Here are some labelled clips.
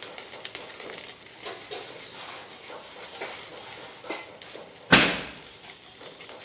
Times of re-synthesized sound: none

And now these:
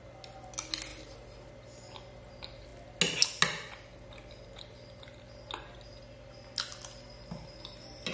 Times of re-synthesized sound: none